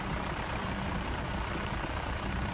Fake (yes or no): yes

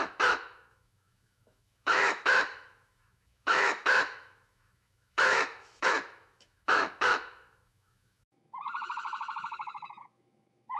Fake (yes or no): yes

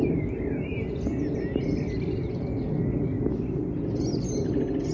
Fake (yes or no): no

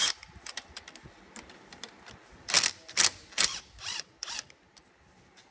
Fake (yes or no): no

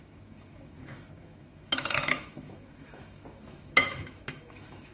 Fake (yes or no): yes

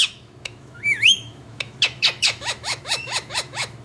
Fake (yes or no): yes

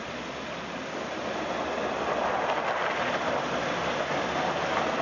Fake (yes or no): no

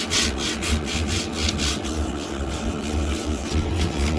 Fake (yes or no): yes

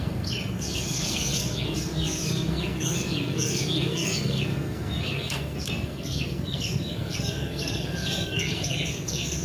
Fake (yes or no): yes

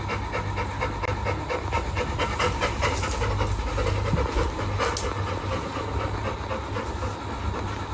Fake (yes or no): no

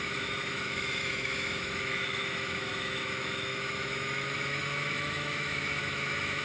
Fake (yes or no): yes